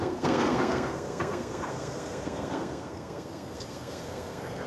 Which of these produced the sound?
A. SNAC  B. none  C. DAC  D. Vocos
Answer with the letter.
A